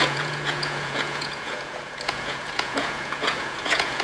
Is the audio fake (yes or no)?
yes